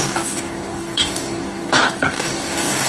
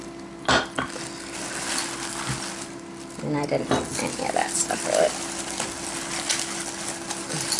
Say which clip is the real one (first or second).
second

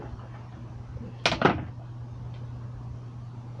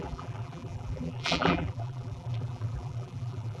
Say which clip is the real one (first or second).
first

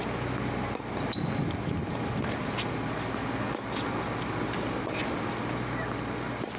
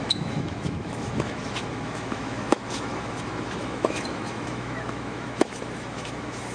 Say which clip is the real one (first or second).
first